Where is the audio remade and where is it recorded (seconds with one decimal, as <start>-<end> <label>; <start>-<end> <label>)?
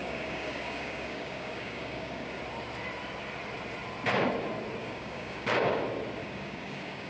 0.0-2.4 remade; 2.4-4.8 recorded; 4.8-5.8 remade; 5.8-6.2 recorded; 6.2-7.1 remade